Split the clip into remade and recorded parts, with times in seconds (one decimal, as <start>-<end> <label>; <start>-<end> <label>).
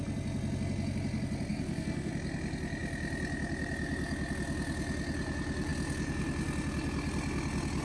0.0-1.5 recorded; 1.5-2.1 remade; 2.1-7.8 recorded